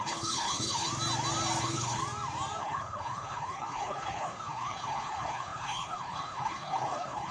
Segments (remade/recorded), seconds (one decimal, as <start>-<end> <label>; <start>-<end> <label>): 0.0-0.9 remade; 0.9-1.6 recorded; 1.6-2.0 remade; 2.0-2.6 recorded; 2.6-7.3 remade